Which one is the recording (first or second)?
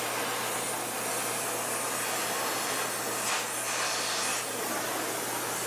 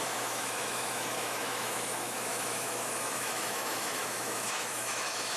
first